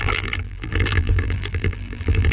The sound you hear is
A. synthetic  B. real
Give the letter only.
A